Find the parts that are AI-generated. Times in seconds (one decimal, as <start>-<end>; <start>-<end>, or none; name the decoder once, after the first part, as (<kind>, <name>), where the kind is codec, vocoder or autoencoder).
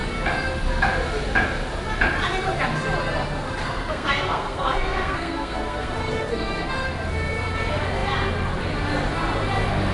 3.6-6.7 (codec, SNAC)